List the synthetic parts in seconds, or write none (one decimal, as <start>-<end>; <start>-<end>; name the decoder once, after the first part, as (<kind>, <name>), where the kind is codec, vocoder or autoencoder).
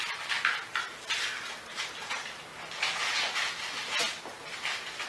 none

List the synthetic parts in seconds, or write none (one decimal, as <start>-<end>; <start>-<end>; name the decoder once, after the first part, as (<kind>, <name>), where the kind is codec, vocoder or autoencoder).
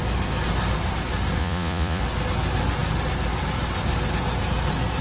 1.4-2.0 (vocoder, Vocos)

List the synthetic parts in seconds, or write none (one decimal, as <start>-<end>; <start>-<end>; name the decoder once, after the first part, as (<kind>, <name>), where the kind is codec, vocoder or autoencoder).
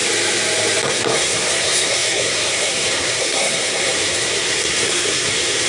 0.9-5.7 (codec, SNAC)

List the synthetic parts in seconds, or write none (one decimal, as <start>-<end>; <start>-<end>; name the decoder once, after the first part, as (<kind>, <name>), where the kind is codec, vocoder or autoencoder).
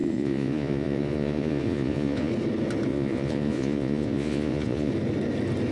0.0-2.3 (vocoder, Vocos); 2.9-4.9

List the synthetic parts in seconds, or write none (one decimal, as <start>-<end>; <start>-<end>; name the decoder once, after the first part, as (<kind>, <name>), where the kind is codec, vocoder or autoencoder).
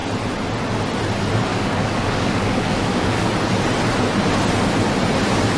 1.5-3.3 (codec, DAC)